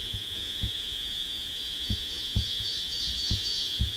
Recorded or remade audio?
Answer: remade